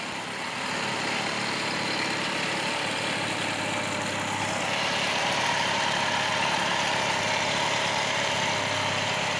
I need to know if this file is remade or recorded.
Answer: recorded